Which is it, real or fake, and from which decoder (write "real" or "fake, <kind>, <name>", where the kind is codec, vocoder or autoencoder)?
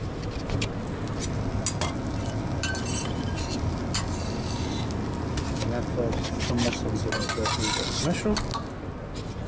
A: real